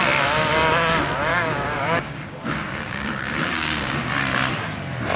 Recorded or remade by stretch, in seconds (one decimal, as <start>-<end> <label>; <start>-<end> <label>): 0.0-1.3 recorded; 1.3-4.1 remade; 4.1-5.2 recorded